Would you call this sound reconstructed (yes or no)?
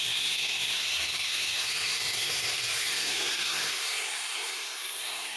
yes